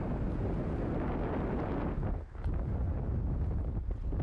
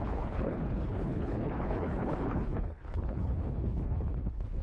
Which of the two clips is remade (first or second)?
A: second